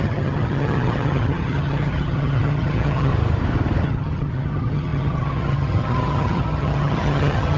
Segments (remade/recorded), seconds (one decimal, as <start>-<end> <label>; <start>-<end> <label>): 0.0-3.1 remade; 3.1-3.8 recorded; 3.8-7.6 remade